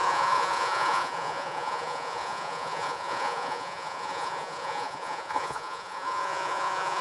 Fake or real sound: fake